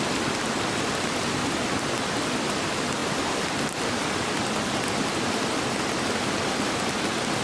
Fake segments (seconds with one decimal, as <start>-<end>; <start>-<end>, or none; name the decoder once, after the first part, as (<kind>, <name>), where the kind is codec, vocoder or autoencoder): none